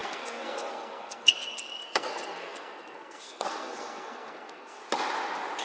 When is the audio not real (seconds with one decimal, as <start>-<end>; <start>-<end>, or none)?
0.0-4.8